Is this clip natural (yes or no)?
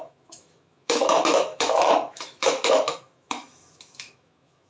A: no